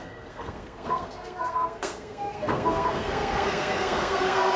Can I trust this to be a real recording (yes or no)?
no